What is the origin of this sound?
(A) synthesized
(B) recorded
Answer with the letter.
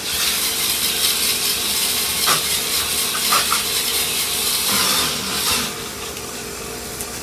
B